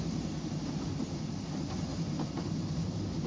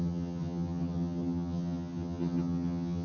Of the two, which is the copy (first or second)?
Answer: second